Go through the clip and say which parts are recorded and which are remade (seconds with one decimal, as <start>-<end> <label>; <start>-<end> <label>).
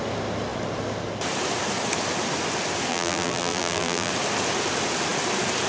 0.0-2.9 recorded; 2.9-4.1 remade; 4.1-5.7 recorded